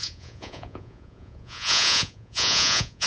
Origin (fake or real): fake